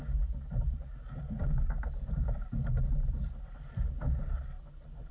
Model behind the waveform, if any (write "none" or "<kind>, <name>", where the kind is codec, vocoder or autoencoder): none